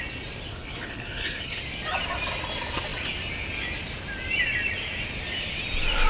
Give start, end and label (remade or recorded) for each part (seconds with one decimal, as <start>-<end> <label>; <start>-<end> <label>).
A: 0.0-0.5 recorded; 0.5-1.6 remade; 1.6-6.1 recorded

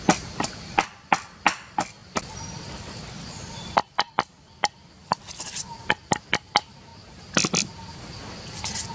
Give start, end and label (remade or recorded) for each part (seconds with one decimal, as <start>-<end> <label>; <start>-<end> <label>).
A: 0.0-8.9 recorded

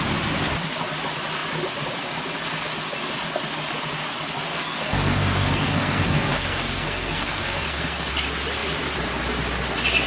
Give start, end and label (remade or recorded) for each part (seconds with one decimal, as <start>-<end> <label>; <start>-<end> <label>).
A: 0.0-4.5 recorded; 4.5-8.1 remade; 8.1-10.1 recorded

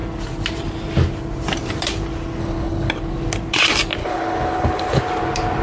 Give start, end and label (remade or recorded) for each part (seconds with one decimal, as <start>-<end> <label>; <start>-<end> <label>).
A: 0.0-2.4 recorded; 2.4-2.9 remade; 2.9-4.0 recorded; 4.0-5.0 remade; 5.0-5.6 recorded

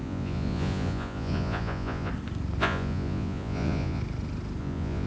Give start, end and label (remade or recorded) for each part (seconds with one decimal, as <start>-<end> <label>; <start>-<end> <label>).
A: 0.0-2.1 remade; 2.1-2.6 recorded; 2.6-4.0 remade; 4.0-4.6 recorded; 4.6-5.1 remade